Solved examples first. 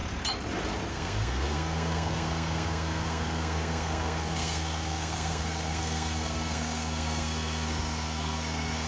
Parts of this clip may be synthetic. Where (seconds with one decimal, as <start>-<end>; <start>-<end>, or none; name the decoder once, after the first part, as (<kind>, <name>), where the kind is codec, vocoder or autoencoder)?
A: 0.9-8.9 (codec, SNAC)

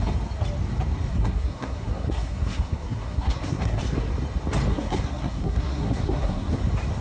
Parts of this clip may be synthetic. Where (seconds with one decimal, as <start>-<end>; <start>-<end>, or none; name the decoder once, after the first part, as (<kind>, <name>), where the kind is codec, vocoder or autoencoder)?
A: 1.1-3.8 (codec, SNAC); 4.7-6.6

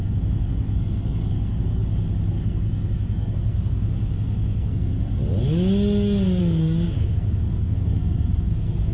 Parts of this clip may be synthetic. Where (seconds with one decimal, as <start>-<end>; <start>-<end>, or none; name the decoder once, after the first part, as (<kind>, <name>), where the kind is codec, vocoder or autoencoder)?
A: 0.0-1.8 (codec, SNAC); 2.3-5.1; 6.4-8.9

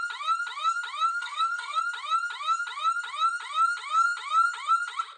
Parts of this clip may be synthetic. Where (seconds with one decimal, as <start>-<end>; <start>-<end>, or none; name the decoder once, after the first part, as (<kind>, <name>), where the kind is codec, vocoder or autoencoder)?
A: 1.1-1.8 (codec, SNAC)

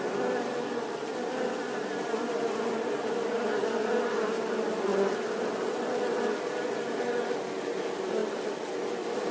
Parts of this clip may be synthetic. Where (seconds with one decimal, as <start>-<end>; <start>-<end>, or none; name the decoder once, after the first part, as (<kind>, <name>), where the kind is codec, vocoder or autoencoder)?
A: none

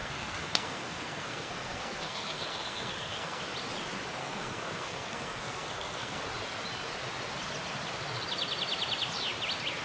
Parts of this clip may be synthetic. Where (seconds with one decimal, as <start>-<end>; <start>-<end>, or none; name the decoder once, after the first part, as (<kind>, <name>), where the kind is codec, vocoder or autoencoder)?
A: 0.0-3.4 (codec, SNAC); 4.2-6.2

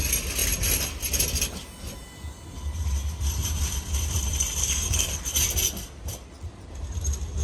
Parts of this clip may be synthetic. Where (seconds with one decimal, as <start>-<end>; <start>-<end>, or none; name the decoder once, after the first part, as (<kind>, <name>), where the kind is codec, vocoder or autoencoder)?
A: 4.6-5.2 (codec, SNAC)